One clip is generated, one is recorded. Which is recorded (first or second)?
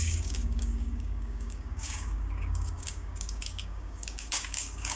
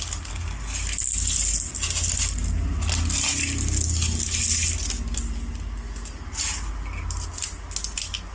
second